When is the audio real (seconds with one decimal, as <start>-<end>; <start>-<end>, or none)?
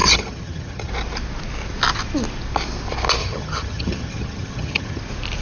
0.9-3.2; 5.0-5.4